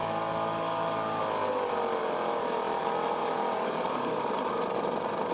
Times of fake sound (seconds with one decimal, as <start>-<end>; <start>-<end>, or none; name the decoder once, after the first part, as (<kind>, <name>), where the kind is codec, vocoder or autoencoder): 0.0-1.2 (codec, DAC); 3.2-3.8